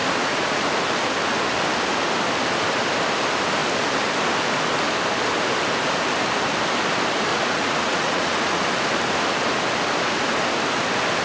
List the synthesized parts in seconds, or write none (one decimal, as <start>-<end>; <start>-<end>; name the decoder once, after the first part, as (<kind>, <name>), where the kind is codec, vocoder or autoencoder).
0.0-0.7 (vocoder, Vocos); 7.3-8.6